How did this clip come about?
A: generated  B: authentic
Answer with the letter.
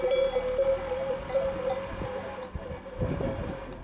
B